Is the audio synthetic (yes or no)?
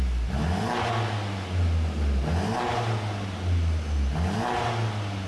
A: no